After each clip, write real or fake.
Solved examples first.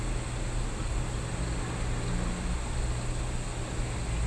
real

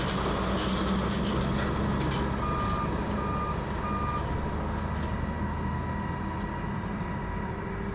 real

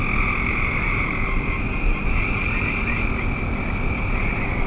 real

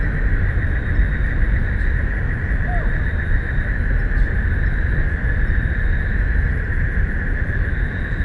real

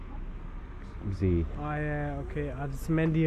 real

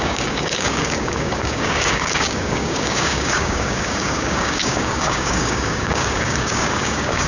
fake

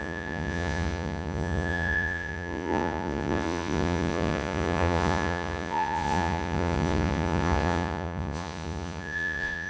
fake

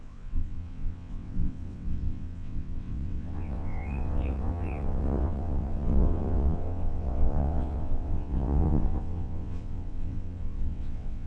fake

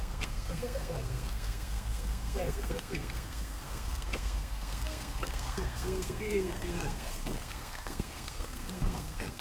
fake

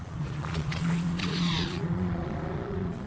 fake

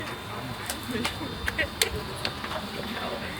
real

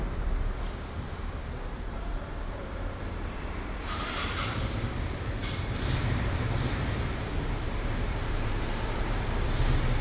fake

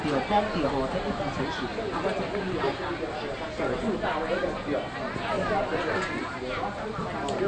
real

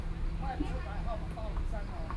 real